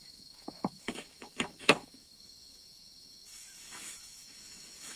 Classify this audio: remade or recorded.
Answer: remade